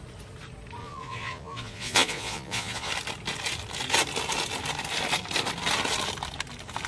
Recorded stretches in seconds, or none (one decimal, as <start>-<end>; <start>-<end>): 0.0-0.8; 2.9-6.9